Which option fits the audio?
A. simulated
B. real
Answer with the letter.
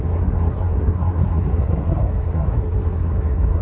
A